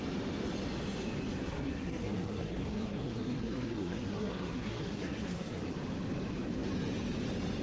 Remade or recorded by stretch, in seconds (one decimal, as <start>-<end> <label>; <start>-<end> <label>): 0.0-1.4 recorded; 1.4-5.6 remade; 5.6-7.6 recorded